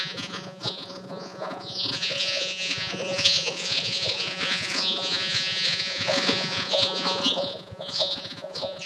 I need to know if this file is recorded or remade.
remade